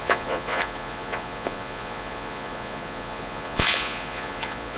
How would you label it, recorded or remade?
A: remade